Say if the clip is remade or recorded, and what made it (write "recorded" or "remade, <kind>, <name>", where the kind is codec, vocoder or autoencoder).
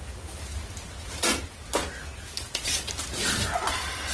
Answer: recorded